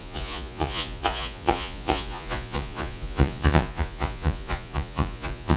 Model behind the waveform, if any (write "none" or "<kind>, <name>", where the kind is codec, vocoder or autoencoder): vocoder, Vocos